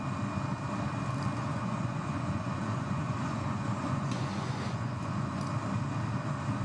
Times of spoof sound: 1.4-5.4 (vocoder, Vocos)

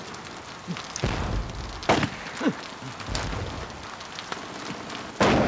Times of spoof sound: none

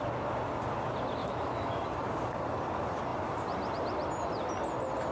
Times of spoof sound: 1.2-1.8 (autoencoder, DAC-VAE)